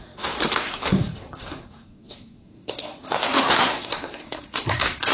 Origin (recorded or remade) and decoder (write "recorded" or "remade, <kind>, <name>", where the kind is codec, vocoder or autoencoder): remade, codec, SNAC